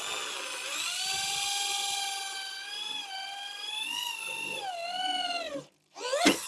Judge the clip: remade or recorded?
recorded